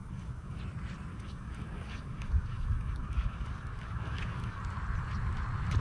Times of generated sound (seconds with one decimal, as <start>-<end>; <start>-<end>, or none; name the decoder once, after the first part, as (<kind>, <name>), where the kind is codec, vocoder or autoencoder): 0.0-0.6 (codec, DAC); 1.1-4.6